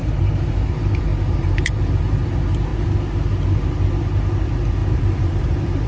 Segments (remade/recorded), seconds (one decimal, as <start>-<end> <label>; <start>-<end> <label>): 0.0-1.1 recorded; 1.1-1.7 remade; 1.7-4.8 recorded; 4.8-5.9 remade